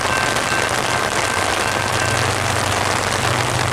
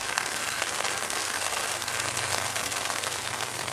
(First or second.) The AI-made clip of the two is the second